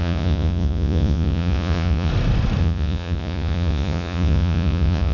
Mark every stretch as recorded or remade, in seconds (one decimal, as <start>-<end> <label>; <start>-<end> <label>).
0.0-2.1 remade; 2.1-2.6 recorded; 2.6-5.1 remade